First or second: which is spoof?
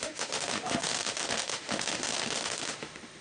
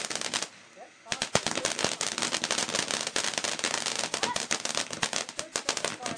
first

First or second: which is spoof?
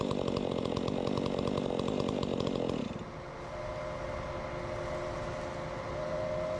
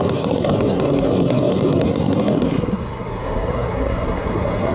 second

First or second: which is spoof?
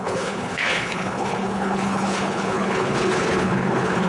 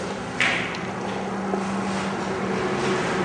first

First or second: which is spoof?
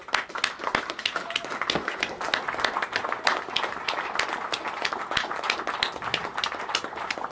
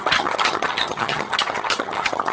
second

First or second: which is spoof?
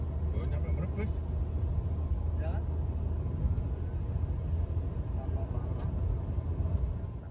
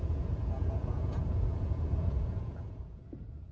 second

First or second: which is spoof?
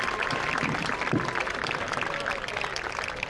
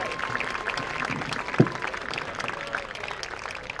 first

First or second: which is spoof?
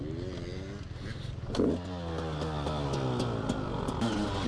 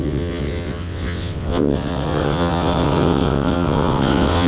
second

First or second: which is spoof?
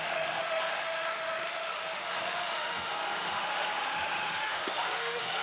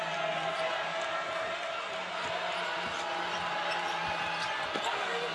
first